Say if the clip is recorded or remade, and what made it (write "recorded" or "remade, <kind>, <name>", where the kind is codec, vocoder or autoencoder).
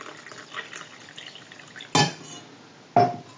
recorded